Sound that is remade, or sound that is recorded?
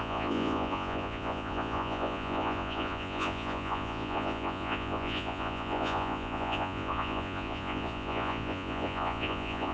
remade